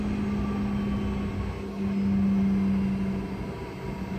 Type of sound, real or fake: real